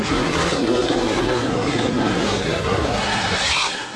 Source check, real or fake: fake